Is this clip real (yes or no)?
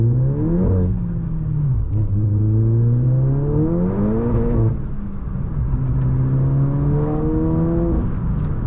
yes